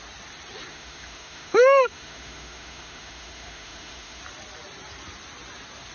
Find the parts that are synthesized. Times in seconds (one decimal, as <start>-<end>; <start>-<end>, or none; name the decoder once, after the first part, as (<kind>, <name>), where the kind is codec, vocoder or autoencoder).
0.7-4.2 (autoencoder, DAC-VAE)